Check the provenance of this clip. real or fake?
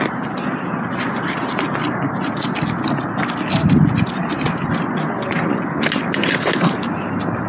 real